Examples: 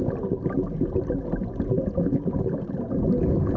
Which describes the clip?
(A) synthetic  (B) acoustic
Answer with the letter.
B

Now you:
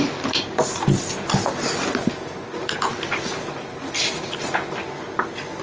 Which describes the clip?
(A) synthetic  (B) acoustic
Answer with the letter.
B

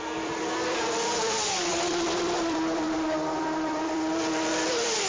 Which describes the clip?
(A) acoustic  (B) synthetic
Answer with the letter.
B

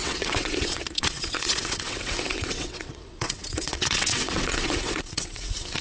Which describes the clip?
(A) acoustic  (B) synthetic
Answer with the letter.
B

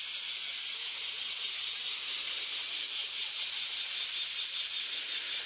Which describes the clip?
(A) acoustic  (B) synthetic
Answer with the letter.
A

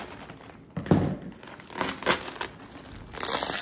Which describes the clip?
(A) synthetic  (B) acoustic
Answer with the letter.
B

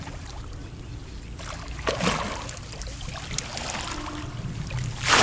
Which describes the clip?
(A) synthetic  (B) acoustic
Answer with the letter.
B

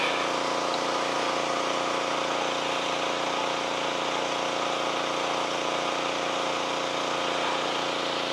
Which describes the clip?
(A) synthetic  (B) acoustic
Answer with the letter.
B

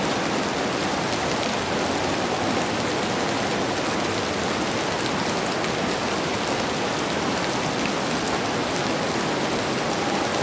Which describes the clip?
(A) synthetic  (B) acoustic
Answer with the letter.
B